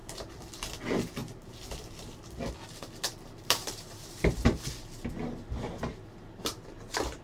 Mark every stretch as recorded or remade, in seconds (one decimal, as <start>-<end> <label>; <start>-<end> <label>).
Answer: 0.0-3.1 recorded; 3.1-4.7 remade; 4.7-7.2 recorded